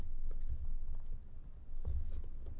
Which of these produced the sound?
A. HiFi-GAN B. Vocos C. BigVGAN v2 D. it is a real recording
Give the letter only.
D